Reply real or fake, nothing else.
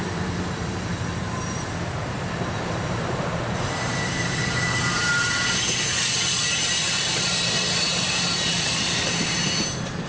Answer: fake